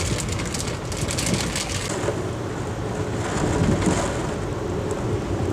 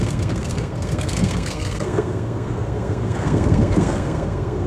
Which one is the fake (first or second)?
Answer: second